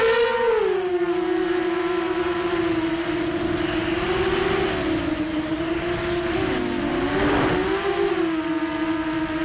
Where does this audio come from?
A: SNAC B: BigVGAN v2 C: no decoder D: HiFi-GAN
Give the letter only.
C